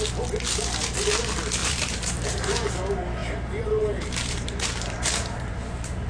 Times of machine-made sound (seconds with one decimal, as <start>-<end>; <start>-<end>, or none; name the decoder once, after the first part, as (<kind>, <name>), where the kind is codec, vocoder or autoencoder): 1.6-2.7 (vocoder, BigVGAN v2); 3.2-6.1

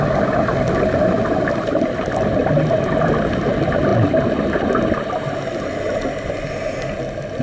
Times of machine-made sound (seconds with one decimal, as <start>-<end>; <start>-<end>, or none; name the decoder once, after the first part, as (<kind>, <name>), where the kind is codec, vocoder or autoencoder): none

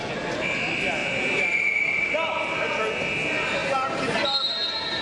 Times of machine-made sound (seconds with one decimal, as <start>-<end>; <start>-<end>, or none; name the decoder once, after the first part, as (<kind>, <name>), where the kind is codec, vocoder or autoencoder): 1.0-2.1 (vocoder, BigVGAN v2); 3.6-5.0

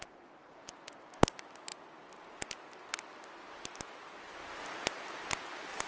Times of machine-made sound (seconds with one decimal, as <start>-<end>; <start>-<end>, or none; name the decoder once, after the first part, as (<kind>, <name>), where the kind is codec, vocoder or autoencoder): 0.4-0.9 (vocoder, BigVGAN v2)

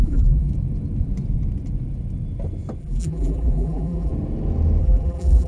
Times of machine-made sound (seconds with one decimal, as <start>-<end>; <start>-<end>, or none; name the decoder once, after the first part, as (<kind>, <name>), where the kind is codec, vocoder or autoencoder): 0.0-0.5 (vocoder, BigVGAN v2); 2.8-4.1; 4.8-5.5

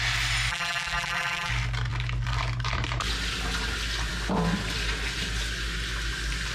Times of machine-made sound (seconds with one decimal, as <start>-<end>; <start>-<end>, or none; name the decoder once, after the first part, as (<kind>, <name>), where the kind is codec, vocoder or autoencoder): 0.5-1.5 (vocoder, BigVGAN v2)